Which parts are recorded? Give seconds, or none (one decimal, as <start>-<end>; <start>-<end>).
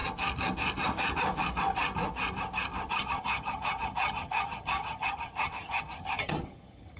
0.0-2.9